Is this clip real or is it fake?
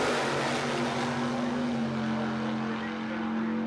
real